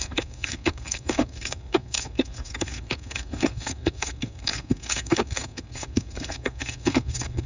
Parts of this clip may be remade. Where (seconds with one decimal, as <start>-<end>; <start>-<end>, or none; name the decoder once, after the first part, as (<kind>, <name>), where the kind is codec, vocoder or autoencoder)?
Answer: 0.0-7.5 (codec, SNAC)